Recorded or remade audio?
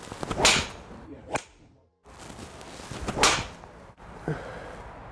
recorded